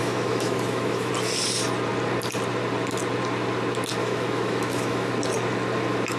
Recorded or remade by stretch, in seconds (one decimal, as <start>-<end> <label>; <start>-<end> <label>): 0.0-1.1 remade; 1.1-4.0 recorded; 4.0-5.1 remade; 5.1-6.2 recorded